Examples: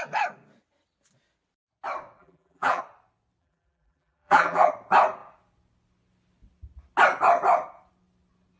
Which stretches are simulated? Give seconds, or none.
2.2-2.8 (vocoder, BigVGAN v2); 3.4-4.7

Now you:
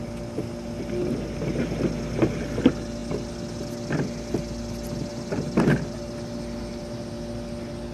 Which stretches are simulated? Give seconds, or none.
5.1-6.8 (vocoder, BigVGAN v2)

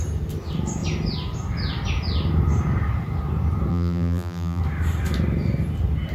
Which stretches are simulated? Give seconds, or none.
3.7-4.6 (vocoder, BigVGAN v2)

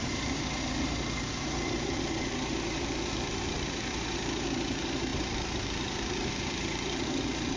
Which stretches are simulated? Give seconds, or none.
0.0-7.6 (vocoder, BigVGAN v2)